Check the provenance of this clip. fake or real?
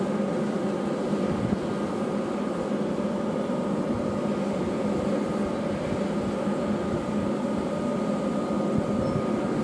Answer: real